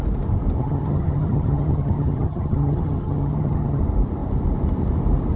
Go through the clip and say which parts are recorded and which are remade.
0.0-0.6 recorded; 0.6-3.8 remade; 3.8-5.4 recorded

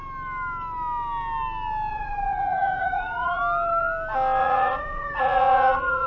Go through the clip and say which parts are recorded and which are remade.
0.0-1.9 recorded; 1.9-3.4 remade; 3.4-4.4 recorded; 4.4-6.1 remade

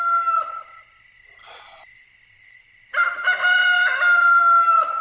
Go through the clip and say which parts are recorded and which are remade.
0.0-5.0 recorded

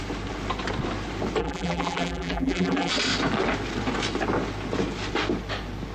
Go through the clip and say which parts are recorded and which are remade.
0.0-1.4 recorded; 1.4-2.9 remade; 2.9-5.9 recorded